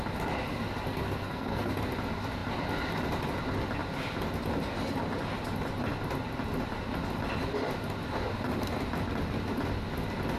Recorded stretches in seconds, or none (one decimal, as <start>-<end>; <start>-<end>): 0.0-0.9; 1.7-10.4